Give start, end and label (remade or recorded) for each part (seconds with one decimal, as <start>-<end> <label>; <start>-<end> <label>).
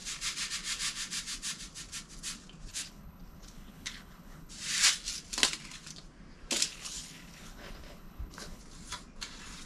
0.0-2.7 recorded; 2.7-4.5 remade; 4.5-6.7 recorded; 6.7-8.6 remade; 8.6-9.7 recorded